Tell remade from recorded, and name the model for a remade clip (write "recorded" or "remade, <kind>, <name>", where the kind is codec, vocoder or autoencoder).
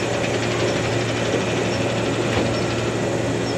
recorded